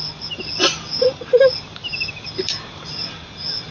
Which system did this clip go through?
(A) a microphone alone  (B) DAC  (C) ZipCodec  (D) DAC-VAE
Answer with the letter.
A